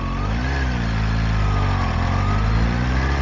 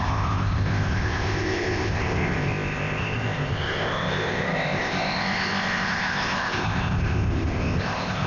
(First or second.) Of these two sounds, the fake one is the second